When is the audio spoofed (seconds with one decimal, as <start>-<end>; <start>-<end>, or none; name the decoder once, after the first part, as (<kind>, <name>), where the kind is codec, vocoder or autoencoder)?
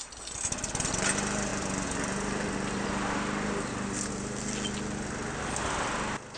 none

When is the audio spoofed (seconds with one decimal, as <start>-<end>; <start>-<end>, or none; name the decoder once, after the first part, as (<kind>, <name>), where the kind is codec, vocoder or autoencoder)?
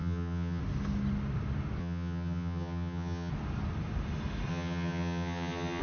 0.0-0.6 (vocoder, HiFi-GAN); 1.8-3.3; 4.5-5.8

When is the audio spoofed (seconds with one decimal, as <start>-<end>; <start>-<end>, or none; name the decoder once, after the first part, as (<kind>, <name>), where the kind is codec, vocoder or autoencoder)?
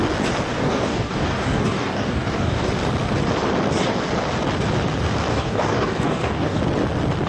0.5-2.7 (codec, DAC); 5.3-6.6